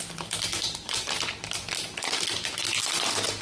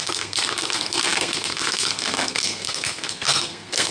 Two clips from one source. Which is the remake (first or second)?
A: second